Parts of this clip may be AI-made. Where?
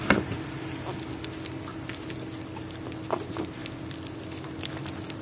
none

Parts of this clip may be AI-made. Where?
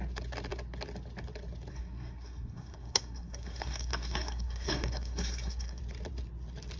1.7-5.8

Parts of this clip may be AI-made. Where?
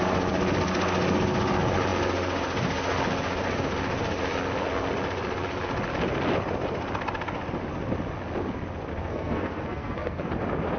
8.9-10.3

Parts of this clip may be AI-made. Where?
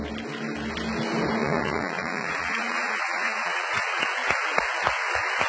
1.4-4.0